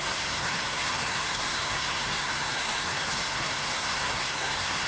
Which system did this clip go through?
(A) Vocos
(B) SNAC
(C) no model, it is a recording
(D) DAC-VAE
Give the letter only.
B